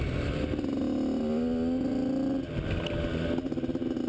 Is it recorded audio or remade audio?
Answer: recorded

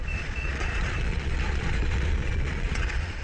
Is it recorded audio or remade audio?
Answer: remade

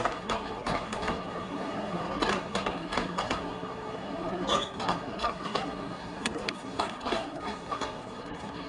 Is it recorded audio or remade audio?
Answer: remade